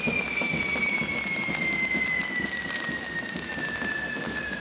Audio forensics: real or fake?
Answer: real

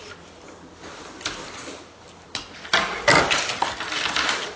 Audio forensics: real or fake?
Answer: real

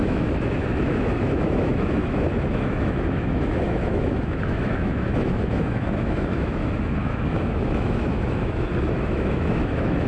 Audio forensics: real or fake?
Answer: fake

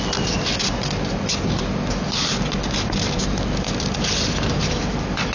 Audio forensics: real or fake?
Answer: real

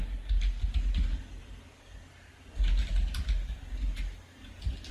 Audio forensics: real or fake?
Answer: real